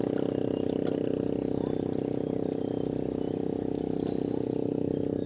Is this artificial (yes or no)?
no